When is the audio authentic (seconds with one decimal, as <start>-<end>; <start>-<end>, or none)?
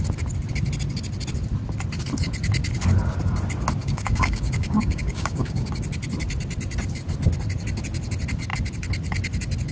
0.0-3.8; 5.7-9.7